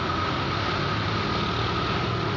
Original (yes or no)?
yes